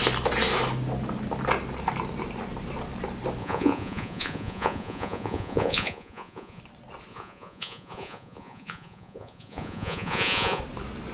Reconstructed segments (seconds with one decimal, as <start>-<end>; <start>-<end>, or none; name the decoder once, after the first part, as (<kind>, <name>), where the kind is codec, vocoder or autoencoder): 3.4-6.6 (vocoder, Vocos); 7.1-10.6